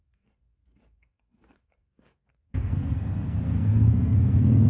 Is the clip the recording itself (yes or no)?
no